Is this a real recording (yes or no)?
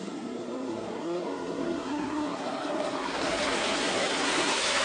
no